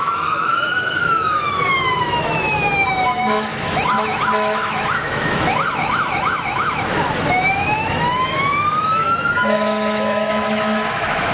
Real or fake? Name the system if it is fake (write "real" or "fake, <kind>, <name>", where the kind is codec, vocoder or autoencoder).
fake, autoencoder, DAC-VAE